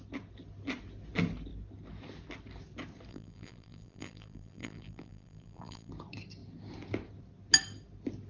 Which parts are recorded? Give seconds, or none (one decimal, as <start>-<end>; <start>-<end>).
0.0-3.1; 5.9-8.3